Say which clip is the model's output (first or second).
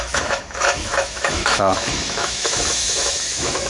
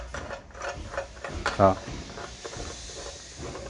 first